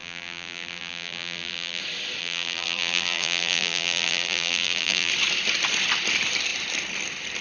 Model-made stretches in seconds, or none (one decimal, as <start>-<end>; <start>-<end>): 0.0-1.8; 2.2-5.1